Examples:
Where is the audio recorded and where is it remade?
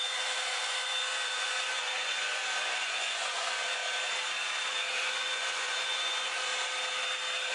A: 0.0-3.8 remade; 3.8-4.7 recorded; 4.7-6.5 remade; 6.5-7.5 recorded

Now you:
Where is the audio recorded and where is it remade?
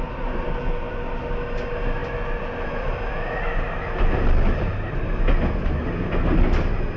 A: 0.0-7.0 recorded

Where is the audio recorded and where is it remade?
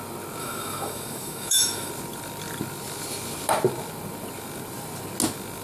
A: 0.0-0.4 recorded; 0.4-1.9 remade; 1.9-5.6 recorded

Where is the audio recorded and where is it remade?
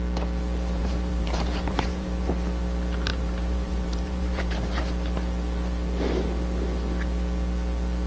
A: 0.0-0.8 recorded; 0.8-2.3 remade; 2.3-3.1 recorded; 3.1-4.8 remade; 4.8-8.1 recorded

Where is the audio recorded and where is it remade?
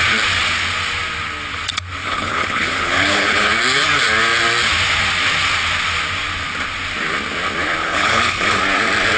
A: 0.0-2.0 recorded; 2.0-3.5 remade; 3.5-7.8 recorded; 7.8-8.6 remade; 8.6-9.2 recorded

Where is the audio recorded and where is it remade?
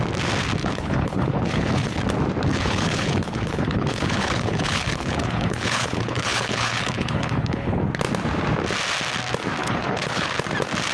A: 0.0-0.6 recorded; 0.6-2.0 remade; 2.0-2.5 recorded; 2.5-7.8 remade; 7.8-9.6 recorded; 9.6-10.3 remade; 10.3-10.9 recorded